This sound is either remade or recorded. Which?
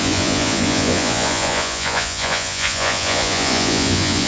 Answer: remade